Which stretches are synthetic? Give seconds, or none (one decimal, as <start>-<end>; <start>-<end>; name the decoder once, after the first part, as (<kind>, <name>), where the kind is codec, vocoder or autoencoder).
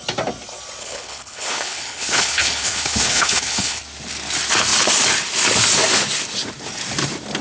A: 0.8-3.8 (codec, HILCodec)